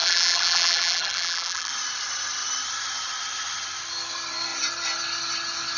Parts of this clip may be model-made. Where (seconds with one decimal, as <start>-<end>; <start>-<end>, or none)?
0.0-1.7